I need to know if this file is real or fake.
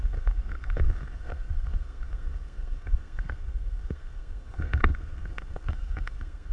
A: fake